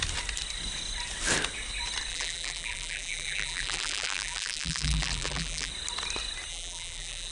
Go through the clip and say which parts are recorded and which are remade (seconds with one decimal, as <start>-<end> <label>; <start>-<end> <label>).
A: 0.0-2.1 recorded; 2.1-5.7 remade; 5.7-6.5 recorded; 6.5-7.3 remade